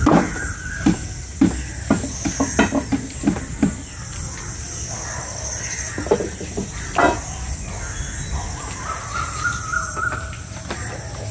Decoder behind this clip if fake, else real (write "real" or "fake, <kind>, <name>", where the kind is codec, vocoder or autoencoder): real